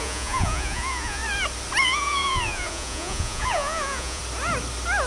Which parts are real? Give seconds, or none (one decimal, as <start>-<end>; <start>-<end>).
1.2-1.8; 4.2-5.1